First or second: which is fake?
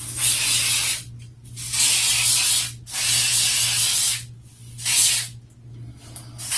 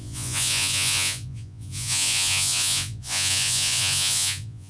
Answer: second